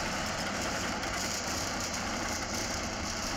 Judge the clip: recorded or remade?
remade